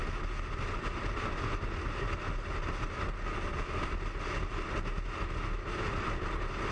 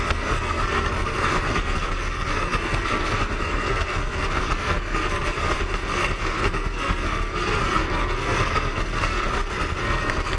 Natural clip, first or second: first